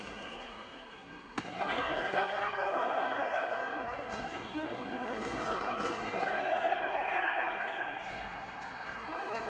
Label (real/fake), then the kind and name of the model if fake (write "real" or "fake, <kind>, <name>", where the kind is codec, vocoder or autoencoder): fake, codec, SNAC